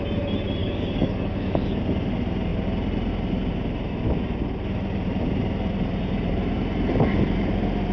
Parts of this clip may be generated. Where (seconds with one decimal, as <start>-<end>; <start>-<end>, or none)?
0.6-1.8